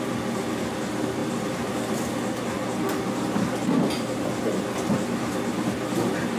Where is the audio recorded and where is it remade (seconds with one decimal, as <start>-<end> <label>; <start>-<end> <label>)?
0.0-6.4 recorded